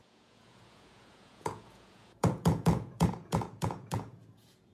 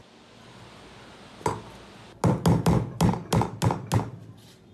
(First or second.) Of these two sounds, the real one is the second